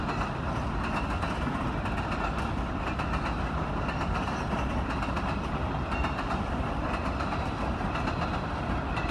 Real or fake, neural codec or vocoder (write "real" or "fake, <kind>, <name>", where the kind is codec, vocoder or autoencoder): real